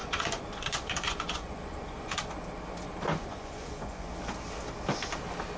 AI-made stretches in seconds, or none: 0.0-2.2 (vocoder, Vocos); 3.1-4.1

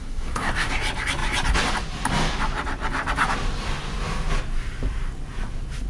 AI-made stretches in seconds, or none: 0.0-0.7 (codec, SNAC)

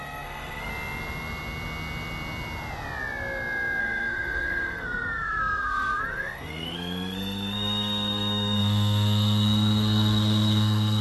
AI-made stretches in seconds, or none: 0.0-0.7 (codec, SNAC); 3.8-11.0

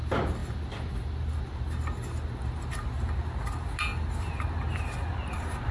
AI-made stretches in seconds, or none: none